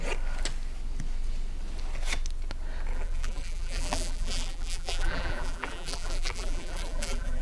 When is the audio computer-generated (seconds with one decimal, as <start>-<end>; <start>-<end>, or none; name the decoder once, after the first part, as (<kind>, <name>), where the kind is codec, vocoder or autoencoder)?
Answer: 2.9-7.4 (vocoder, BigVGAN v2)